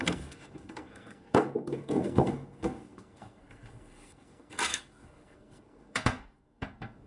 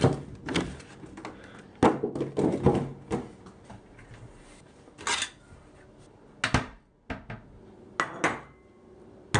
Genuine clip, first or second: second